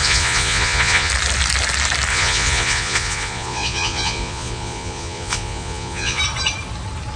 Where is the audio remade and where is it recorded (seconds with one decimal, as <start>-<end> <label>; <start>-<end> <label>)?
0.0-1.1 remade; 1.1-2.1 recorded; 2.1-6.2 remade; 6.2-7.2 recorded